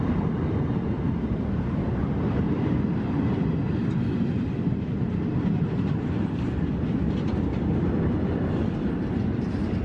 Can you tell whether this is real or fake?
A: real